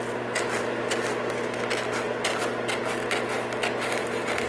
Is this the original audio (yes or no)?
yes